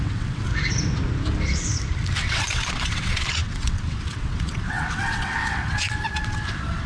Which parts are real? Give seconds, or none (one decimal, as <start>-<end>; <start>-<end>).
0.5-2.2